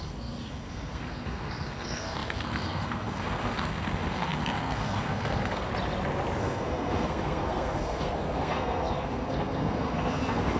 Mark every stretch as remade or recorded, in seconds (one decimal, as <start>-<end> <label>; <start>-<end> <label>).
0.0-5.7 remade; 5.7-6.4 recorded; 6.4-10.6 remade